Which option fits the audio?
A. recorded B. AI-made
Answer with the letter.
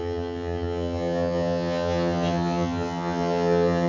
B